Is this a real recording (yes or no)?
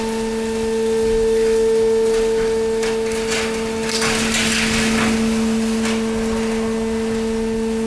yes